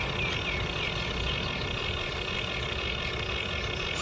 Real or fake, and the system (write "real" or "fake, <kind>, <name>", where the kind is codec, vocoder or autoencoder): real